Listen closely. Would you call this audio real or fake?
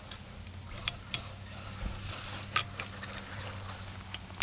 real